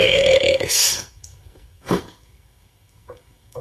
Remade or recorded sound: remade